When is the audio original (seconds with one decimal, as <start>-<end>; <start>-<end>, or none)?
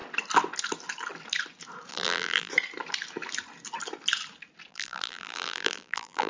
0.0-1.9; 2.5-4.7